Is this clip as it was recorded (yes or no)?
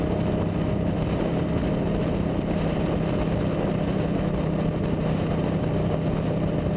yes